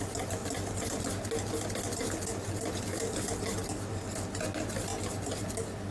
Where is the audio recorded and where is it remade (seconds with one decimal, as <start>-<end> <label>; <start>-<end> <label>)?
0.0-5.9 recorded